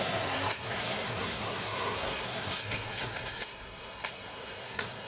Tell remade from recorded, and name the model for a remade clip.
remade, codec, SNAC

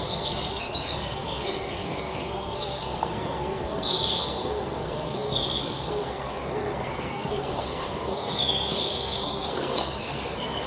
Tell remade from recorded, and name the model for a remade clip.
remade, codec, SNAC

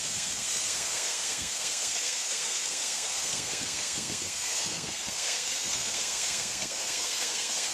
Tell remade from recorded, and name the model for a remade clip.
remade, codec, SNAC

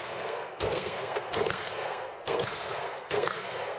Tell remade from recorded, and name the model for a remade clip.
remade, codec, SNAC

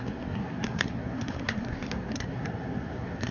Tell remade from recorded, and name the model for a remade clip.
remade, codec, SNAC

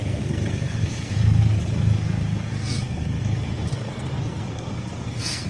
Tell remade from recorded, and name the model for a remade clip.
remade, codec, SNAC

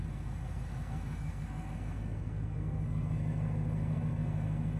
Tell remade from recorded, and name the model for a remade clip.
remade, codec, SNAC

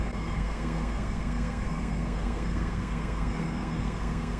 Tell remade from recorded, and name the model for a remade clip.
remade, codec, SNAC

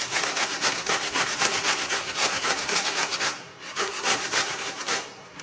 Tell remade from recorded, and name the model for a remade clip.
remade, codec, SNAC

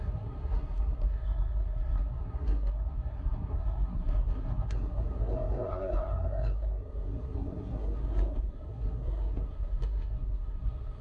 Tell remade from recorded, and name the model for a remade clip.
remade, codec, SNAC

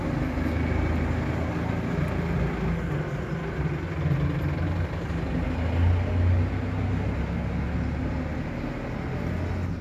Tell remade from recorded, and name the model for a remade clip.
recorded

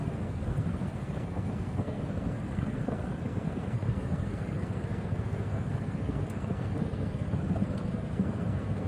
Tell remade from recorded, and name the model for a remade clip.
remade, codec, SNAC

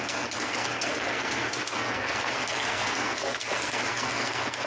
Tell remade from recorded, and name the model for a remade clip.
remade, codec, SNAC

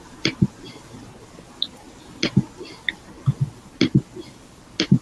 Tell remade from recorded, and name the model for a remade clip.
recorded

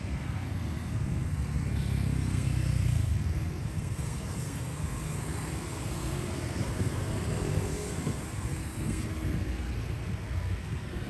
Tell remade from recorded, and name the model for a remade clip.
remade, codec, SNAC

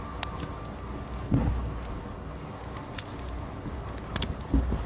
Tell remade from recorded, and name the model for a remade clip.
recorded